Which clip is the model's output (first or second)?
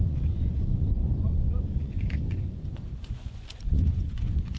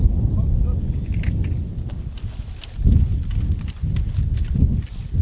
first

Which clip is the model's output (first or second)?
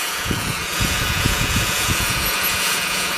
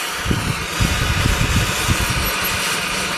first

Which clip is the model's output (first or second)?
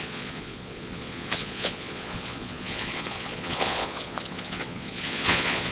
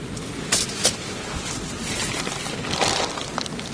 first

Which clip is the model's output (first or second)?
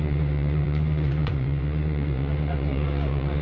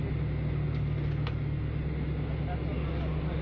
first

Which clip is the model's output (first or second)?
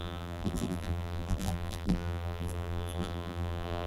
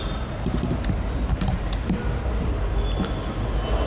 first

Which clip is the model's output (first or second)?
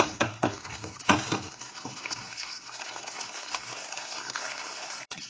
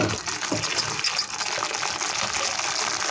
first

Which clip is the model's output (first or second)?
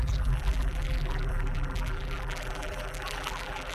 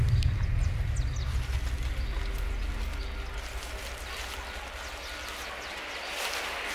first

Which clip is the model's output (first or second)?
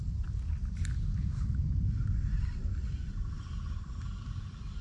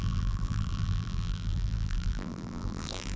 second